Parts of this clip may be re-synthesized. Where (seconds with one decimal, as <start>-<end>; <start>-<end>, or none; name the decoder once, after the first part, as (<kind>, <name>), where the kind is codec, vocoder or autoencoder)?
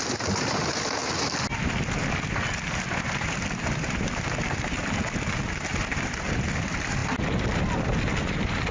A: none